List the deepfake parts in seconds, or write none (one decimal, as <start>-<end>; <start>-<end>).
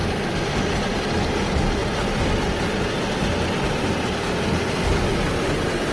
none